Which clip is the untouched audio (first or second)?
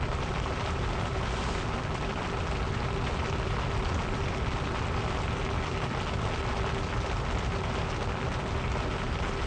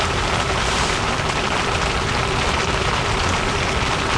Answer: first